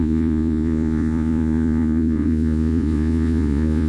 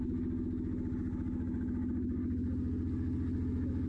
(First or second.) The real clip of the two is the second